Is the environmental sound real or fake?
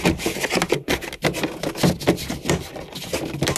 real